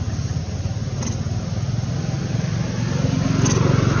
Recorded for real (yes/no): yes